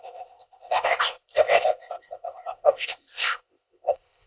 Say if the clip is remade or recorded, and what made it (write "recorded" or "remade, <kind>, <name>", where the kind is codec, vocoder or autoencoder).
remade, codec, ZipCodec